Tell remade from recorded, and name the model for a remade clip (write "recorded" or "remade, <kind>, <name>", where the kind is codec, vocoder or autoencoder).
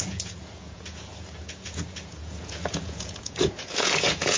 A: remade, vocoder, Vocos